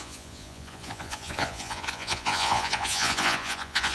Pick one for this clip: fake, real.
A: fake